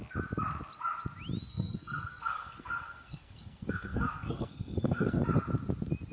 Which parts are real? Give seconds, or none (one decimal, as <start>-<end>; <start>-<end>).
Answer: 0.0-1.5; 5.2-6.1